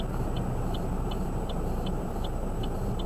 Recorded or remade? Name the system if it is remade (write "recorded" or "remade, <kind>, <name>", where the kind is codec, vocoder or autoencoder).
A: remade, vocoder, BigVGAN v2